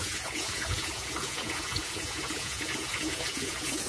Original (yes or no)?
no